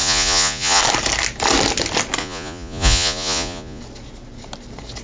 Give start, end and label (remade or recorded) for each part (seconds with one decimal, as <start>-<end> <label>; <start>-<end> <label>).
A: 0.0-0.8 remade; 0.8-2.2 recorded; 2.2-3.8 remade; 3.8-5.0 recorded